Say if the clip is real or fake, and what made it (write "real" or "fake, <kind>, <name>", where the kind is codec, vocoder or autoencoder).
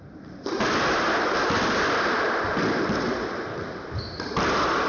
fake, vocoder, BigVGAN v2